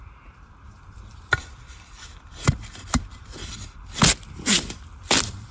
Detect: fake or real fake